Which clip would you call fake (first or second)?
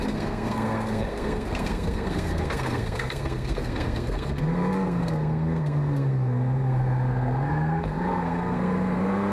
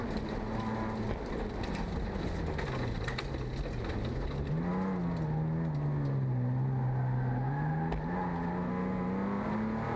first